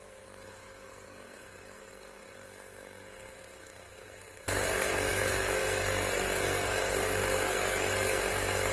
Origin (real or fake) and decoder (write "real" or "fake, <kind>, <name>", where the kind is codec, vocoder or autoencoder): fake, codec, SNAC